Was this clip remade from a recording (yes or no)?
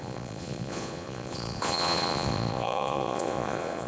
yes